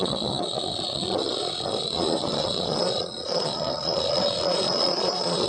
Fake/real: fake